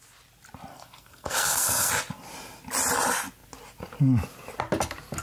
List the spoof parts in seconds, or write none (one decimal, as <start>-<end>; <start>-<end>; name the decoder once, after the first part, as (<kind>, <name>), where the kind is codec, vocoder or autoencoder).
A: 0.7-1.9 (codec, SNAC)